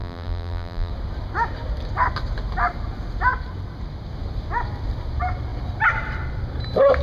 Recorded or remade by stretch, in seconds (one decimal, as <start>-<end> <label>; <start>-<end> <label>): 0.0-0.9 remade; 0.9-7.0 recorded